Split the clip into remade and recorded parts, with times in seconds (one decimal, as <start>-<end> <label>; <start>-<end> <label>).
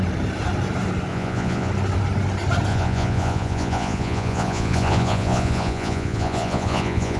0.0-1.1 recorded; 1.1-1.7 remade; 1.7-2.7 recorded; 2.7-7.2 remade